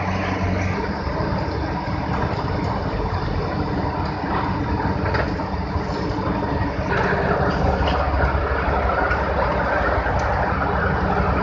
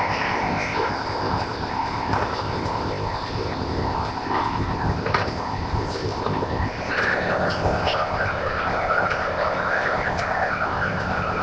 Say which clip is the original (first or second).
first